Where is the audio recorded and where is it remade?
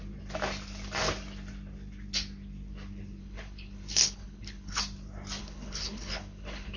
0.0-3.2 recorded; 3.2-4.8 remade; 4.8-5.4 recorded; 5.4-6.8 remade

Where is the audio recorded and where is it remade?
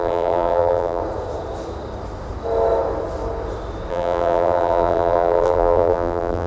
0.0-1.0 remade; 1.0-3.9 recorded; 3.9-6.5 remade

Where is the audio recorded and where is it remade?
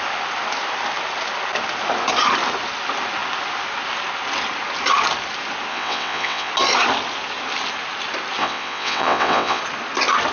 0.0-5.7 recorded; 5.7-6.5 remade; 6.5-8.4 recorded; 8.4-9.6 remade; 9.6-10.3 recorded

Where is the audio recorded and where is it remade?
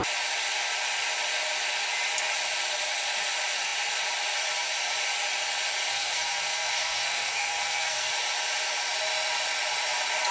0.0-5.9 recorded; 5.9-8.1 remade; 8.1-10.3 recorded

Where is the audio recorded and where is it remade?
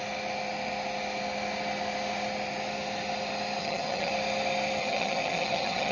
0.0-3.6 recorded; 3.6-4.1 remade; 4.1-4.8 recorded; 4.8-5.9 remade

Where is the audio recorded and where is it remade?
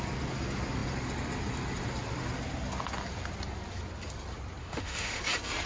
0.0-4.6 recorded; 4.6-5.2 remade; 5.2-5.7 recorded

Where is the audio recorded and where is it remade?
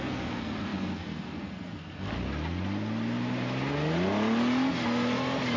0.0-2.1 remade; 2.1-5.6 recorded